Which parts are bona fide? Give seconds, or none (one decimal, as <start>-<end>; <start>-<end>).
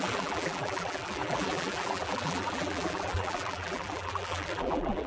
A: none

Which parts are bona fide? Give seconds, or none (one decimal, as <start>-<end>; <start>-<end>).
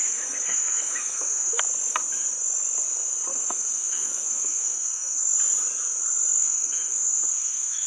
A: 1.6-3.3; 5.3-6.4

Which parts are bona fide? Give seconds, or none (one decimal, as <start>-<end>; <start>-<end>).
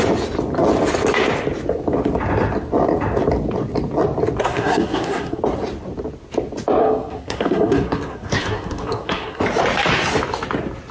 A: 0.0-4.4; 5.4-6.8; 9.4-10.9